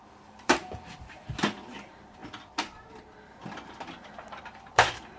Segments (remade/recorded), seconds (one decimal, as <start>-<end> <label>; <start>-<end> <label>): 0.0-2.2 remade; 2.2-4.4 recorded; 4.4-5.2 remade